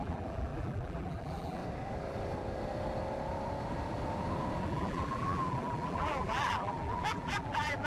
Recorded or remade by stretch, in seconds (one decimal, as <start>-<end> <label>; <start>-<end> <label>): 0.0-1.6 remade; 1.6-4.6 recorded; 4.6-7.9 remade